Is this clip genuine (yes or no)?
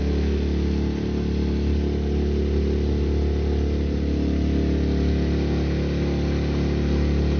yes